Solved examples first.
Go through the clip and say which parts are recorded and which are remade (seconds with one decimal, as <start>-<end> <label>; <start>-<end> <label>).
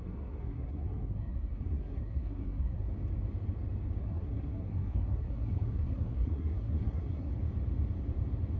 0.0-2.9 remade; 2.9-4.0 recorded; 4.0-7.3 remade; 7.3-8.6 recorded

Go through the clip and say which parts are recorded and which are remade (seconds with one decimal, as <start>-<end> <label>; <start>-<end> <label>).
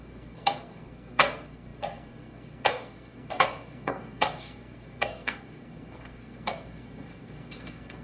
0.0-8.0 remade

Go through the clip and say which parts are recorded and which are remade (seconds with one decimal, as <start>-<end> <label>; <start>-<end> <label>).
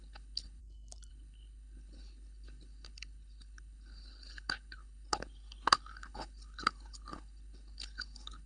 0.0-0.6 remade; 0.6-1.1 recorded; 1.1-8.5 remade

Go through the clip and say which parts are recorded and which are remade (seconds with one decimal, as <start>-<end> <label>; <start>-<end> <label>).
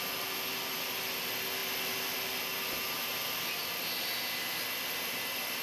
0.0-5.6 recorded